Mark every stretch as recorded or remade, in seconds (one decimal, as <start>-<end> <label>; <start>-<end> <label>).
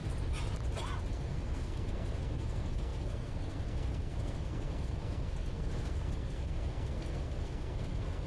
0.0-1.1 recorded; 1.1-8.3 remade